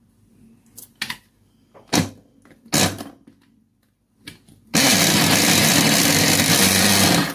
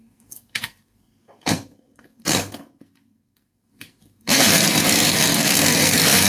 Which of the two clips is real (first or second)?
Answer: first